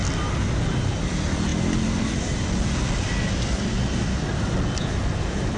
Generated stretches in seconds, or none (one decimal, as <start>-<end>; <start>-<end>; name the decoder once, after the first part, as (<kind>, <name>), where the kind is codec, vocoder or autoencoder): none